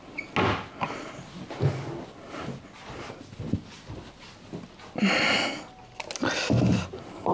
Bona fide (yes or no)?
yes